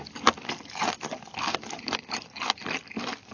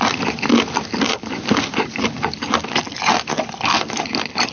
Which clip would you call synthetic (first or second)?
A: first